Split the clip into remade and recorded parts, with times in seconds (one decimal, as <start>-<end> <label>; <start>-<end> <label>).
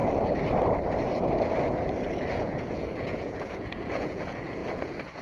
0.0-2.3 recorded; 2.3-5.2 remade